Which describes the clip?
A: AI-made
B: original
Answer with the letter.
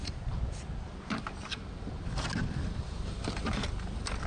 B